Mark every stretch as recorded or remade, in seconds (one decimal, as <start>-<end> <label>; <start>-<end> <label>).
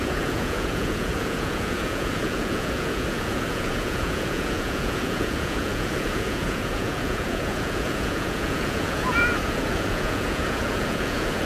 0.0-11.5 remade